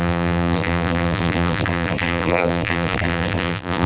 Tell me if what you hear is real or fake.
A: fake